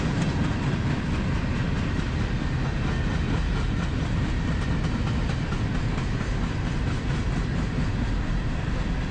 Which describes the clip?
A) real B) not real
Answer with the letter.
A